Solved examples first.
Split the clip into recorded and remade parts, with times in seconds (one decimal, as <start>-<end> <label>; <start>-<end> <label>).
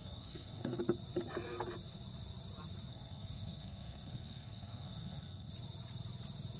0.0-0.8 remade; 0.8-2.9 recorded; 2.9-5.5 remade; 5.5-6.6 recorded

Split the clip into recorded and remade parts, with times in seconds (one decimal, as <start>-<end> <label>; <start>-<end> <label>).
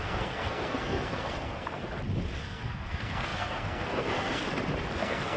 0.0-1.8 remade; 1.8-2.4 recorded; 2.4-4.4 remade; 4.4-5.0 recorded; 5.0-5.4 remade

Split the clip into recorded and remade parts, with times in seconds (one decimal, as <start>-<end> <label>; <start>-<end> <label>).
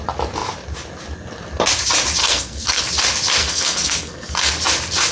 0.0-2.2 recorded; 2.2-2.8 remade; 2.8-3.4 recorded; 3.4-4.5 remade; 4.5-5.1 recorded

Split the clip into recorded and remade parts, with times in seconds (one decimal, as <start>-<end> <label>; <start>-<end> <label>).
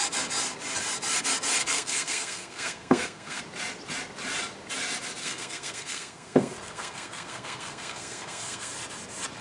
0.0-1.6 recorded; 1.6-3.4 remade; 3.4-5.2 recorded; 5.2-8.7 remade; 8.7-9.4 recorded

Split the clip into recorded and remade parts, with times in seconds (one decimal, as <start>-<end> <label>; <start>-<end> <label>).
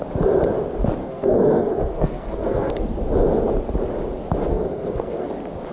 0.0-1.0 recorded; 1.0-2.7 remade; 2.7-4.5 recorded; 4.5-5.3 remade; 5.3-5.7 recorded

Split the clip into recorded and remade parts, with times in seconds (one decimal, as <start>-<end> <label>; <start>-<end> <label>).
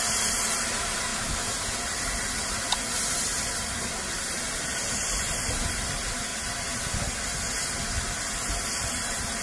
0.0-9.4 recorded